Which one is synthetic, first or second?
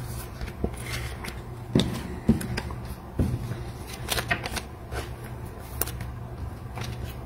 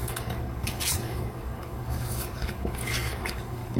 second